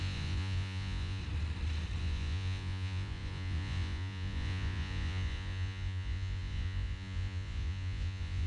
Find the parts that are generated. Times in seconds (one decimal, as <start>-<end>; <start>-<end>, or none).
0.0-1.2; 2.0-8.5